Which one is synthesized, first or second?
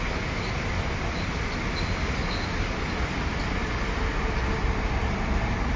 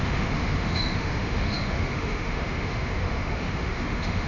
second